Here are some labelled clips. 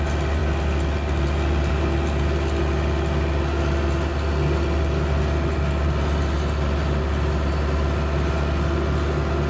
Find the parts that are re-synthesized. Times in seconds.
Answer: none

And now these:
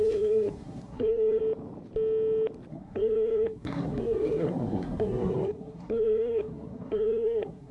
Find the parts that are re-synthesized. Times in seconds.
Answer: 0.0-1.4 (codec, SNAC); 2.7-7.7

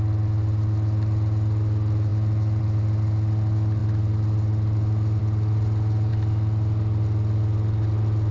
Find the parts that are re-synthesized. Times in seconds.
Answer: none